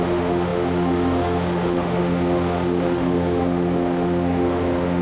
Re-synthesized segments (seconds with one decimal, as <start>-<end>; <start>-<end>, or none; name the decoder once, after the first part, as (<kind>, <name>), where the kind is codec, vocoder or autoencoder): 0.0-5.0 (autoencoder, DAC-VAE)